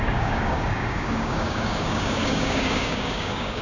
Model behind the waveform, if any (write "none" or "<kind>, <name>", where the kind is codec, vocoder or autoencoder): codec, DAC